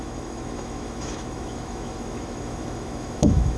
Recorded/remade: remade